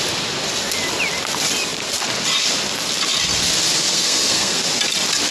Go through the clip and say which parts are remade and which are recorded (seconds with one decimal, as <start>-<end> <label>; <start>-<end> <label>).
0.0-3.9 recorded; 3.9-4.6 remade; 4.6-5.3 recorded